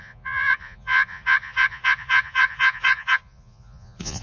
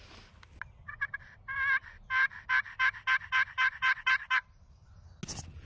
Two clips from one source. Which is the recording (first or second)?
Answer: second